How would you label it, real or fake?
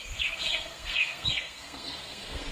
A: fake